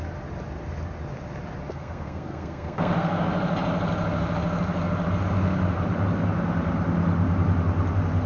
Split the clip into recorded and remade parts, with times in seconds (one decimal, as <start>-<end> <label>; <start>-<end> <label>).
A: 0.0-1.7 recorded; 1.7-3.2 remade; 3.2-8.3 recorded

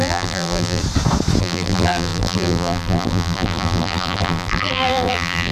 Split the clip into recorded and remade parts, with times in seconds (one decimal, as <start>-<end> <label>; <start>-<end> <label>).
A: 0.0-0.8 remade; 0.8-1.4 recorded; 1.4-5.5 remade

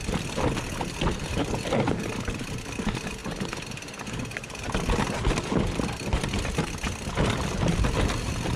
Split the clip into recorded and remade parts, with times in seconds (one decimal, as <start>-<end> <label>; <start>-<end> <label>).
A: 0.0-8.6 recorded

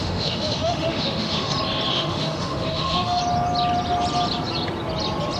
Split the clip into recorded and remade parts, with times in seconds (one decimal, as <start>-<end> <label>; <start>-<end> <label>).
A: 0.0-1.5 remade; 1.5-1.9 recorded; 1.9-3.2 remade; 3.2-5.4 recorded

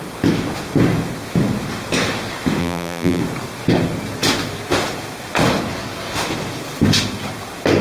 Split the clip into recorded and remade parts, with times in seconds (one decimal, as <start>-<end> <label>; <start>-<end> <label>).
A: 0.0-2.6 recorded; 2.6-3.2 remade; 3.2-7.8 recorded

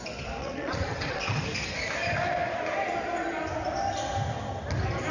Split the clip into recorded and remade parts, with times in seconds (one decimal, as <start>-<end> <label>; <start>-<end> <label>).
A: 0.0-0.4 recorded; 0.4-1.4 remade; 1.4-5.1 recorded

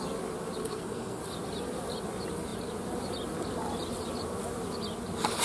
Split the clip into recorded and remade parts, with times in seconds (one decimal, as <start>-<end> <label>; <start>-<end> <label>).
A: 0.0-0.6 recorded; 0.6-1.2 remade; 1.2-5.4 recorded

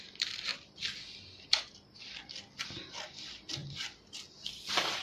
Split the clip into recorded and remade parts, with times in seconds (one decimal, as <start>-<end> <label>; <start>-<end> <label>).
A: 0.0-5.0 recorded